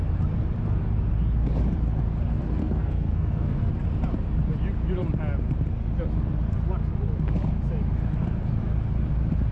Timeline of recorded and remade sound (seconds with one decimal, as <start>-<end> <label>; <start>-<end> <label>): 0.0-2.6 recorded; 2.6-3.7 remade; 3.7-9.5 recorded